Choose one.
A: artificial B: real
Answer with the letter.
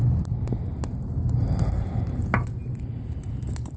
B